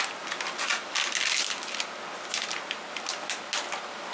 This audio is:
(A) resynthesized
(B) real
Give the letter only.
B